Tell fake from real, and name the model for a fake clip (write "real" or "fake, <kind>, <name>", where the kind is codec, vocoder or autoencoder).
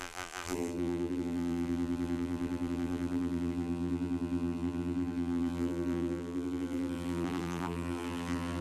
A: fake, vocoder, BigVGAN v2